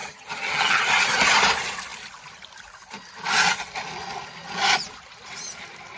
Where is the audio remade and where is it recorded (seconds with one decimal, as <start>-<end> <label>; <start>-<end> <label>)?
0.0-0.8 remade; 0.8-6.0 recorded